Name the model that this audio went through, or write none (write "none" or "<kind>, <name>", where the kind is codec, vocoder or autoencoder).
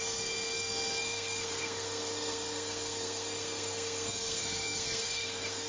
codec, SNAC